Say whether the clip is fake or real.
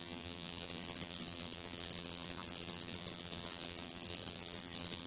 fake